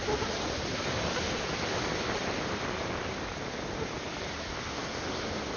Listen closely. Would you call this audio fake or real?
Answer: real